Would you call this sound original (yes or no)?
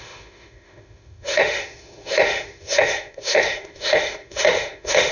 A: no